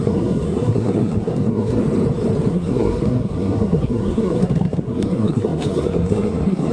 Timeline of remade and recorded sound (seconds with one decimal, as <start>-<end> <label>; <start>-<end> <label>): 0.0-1.8 remade; 1.8-2.5 recorded; 2.5-6.7 remade